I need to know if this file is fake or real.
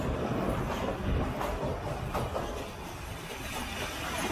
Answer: real